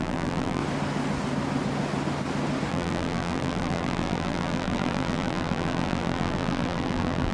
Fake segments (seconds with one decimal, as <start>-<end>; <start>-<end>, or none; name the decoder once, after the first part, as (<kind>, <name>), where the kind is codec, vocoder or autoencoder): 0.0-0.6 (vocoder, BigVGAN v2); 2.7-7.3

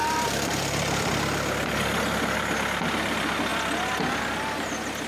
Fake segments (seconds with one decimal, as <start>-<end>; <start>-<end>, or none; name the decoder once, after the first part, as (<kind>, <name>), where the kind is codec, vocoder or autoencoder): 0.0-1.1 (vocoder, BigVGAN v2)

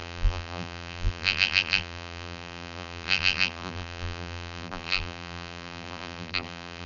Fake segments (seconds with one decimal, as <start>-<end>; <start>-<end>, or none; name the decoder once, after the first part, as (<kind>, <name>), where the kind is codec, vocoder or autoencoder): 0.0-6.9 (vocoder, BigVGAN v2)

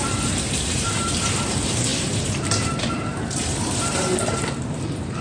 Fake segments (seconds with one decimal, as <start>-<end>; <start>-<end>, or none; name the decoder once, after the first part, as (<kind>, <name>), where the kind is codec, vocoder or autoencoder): 0.0-5.2 (vocoder, BigVGAN v2)

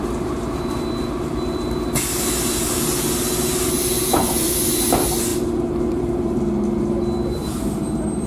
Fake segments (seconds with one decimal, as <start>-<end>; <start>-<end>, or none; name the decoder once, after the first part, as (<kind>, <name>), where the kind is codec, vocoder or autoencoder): 3.8-4.5 (vocoder, BigVGAN v2); 5.3-6.4